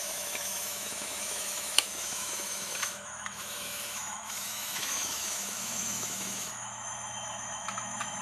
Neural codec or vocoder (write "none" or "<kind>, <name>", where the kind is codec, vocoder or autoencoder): autoencoder, DAC-VAE